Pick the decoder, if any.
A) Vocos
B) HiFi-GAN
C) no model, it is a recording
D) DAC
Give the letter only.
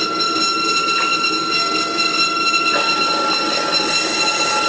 C